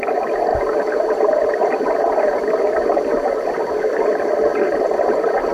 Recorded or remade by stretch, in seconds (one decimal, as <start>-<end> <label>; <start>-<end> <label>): 0.0-5.5 recorded